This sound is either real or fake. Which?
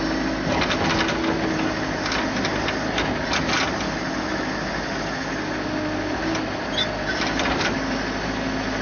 real